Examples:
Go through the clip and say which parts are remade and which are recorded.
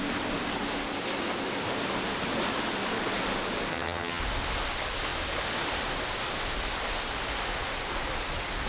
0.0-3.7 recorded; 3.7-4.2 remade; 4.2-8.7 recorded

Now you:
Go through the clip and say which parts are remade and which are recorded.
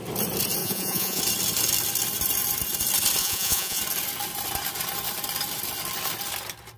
0.0-0.6 recorded; 0.6-1.2 remade; 1.2-3.2 recorded; 3.2-3.8 remade; 3.8-6.8 recorded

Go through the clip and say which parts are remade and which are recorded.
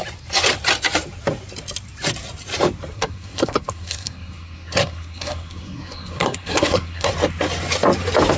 0.0-2.9 recorded; 2.9-7.1 remade; 7.1-8.4 recorded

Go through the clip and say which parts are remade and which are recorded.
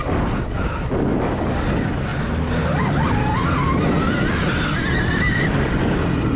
0.0-5.1 recorded; 5.1-5.7 remade; 5.7-6.4 recorded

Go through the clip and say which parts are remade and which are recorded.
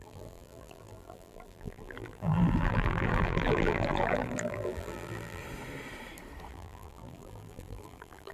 0.0-5.4 remade; 5.4-6.5 recorded; 6.5-8.3 remade